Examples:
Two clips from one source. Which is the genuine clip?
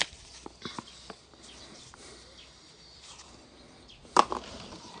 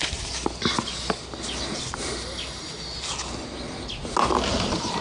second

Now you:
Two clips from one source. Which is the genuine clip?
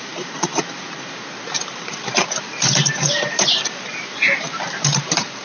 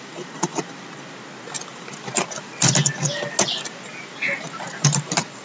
second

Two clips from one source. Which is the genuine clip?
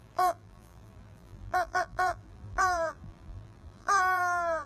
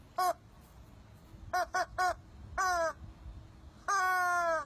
second